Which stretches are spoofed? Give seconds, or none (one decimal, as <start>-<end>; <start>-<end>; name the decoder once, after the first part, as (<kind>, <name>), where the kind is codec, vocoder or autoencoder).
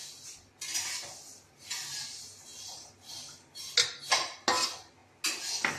none